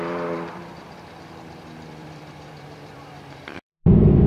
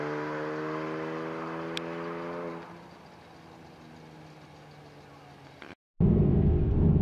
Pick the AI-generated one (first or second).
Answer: first